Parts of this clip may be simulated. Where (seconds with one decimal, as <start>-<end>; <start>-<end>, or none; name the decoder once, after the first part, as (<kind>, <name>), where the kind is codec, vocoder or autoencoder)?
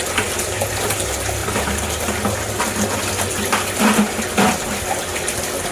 none